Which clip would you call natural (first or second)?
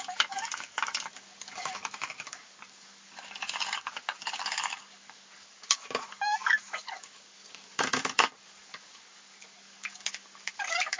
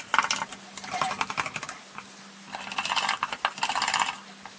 second